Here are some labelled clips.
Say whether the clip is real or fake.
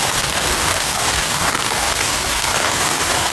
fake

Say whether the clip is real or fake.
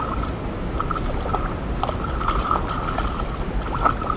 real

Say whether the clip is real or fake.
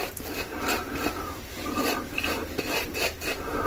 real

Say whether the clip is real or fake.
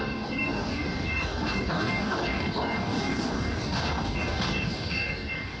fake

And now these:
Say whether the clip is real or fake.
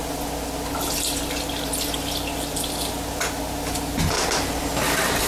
real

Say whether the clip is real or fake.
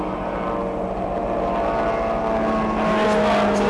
real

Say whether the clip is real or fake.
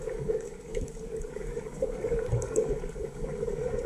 fake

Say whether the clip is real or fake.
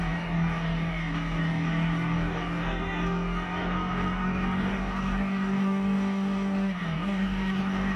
fake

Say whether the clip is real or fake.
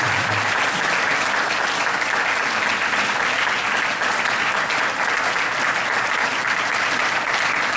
real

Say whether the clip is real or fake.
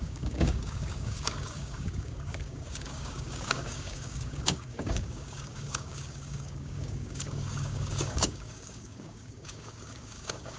fake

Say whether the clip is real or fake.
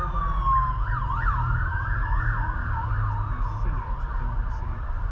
real